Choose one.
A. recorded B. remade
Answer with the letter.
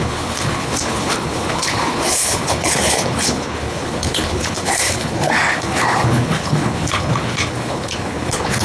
B